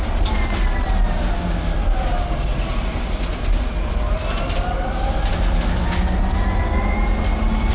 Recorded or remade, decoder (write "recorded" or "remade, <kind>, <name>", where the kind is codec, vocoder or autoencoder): recorded